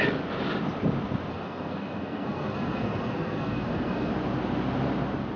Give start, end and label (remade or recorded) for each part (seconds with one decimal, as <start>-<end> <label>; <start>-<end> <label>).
0.0-1.3 recorded; 1.3-4.1 remade; 4.1-5.4 recorded